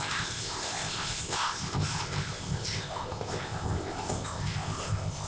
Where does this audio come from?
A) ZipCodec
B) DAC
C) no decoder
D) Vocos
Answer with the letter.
A